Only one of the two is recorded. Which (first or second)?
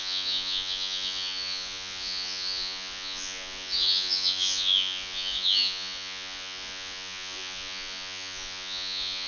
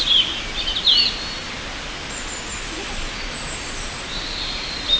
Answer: second